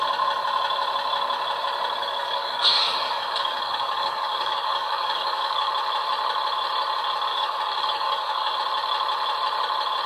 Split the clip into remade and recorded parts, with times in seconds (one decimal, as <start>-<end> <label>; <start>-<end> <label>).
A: 0.0-2.0 recorded; 2.0-5.7 remade; 5.7-7.3 recorded; 7.3-8.5 remade; 8.5-10.1 recorded